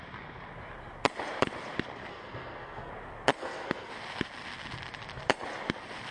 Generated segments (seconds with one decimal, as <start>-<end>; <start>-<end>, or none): 2.1-2.9; 3.4-3.9